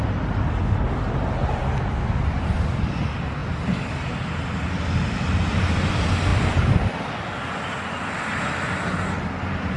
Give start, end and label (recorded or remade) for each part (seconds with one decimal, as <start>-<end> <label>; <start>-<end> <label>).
0.0-9.8 recorded